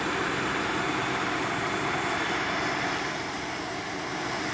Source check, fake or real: real